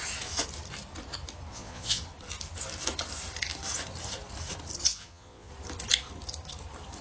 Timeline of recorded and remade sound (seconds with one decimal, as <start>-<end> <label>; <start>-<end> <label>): 0.0-1.5 recorded; 1.5-2.0 remade; 2.0-4.9 recorded; 4.9-5.5 remade; 5.5-7.0 recorded